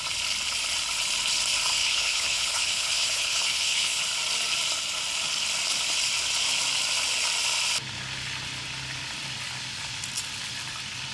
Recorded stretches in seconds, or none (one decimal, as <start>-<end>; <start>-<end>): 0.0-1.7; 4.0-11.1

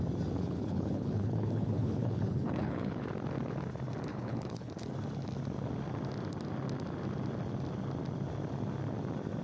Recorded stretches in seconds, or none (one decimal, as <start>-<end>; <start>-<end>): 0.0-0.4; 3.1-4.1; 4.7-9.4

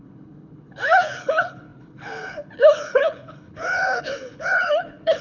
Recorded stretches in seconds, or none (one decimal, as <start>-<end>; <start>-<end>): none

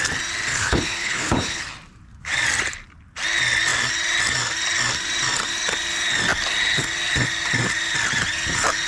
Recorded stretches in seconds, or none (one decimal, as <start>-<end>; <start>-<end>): 0.0-0.5; 1.6-8.9